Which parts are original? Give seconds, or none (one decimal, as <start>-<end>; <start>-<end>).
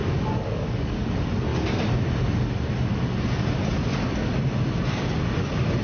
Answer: 1.1-5.8